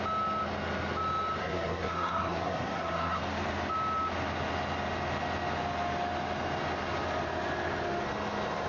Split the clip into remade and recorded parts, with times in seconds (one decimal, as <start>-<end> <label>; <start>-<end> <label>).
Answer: 0.0-1.4 recorded; 1.4-3.2 remade; 3.2-8.7 recorded